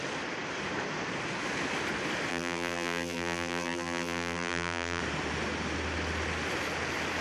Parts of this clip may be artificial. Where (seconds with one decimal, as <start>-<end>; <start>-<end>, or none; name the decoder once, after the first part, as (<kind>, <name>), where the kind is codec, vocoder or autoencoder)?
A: 2.3-5.0 (vocoder, BigVGAN v2)